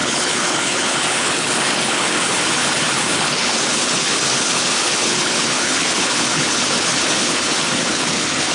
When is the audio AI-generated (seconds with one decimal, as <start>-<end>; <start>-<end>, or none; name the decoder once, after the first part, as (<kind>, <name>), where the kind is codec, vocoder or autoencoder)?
0.0-8.5 (codec, HILCodec)